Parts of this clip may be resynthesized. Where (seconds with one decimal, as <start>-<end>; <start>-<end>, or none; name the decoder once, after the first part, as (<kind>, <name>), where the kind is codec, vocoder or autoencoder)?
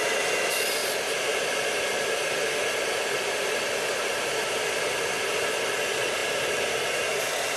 0.0-7.6 (vocoder, BigVGAN v2)